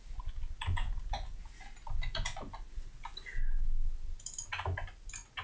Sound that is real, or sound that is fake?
real